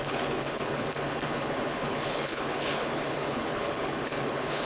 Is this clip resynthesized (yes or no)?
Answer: yes